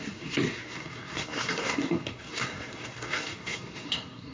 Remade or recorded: remade